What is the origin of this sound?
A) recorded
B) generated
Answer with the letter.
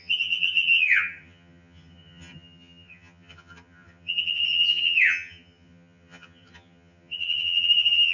B